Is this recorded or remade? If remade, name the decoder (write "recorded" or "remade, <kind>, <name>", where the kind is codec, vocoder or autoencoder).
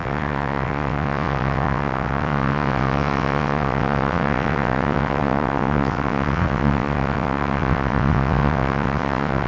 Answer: remade, vocoder, WaveNeXt